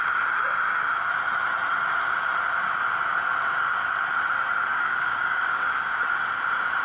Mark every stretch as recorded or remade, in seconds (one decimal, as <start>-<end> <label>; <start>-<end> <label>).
0.0-4.7 recorded; 4.7-6.0 remade; 6.0-6.8 recorded